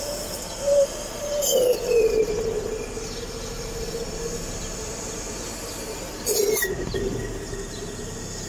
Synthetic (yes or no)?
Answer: no